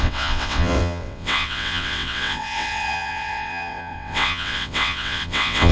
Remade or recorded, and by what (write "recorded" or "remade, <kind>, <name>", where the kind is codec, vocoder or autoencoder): remade, vocoder, WaveNeXt